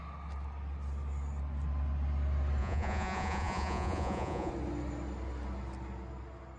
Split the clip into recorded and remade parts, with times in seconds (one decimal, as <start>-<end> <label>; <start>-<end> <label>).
0.0-2.6 recorded; 2.6-4.5 remade; 4.5-6.6 recorded